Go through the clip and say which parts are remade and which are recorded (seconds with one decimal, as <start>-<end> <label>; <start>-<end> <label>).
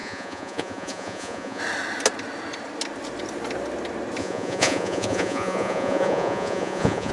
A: 0.0-1.6 remade; 1.6-4.2 recorded; 4.2-7.1 remade